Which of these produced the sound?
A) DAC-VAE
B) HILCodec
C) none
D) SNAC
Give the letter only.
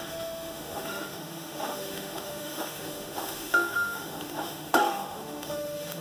A